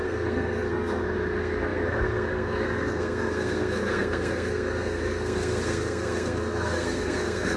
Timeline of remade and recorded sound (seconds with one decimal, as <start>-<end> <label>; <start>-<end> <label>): 0.0-7.6 remade